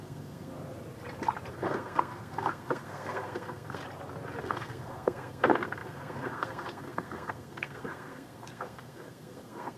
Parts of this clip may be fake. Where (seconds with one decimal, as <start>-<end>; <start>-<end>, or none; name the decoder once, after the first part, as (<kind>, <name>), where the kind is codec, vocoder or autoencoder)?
0.0-0.5 (codec, SNAC); 1.5-3.8; 4.4-9.8